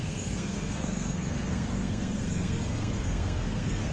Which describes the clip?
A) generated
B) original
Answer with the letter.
A